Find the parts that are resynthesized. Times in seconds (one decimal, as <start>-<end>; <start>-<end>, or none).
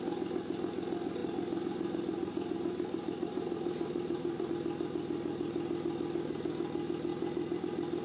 1.2-4.5; 7.1-7.6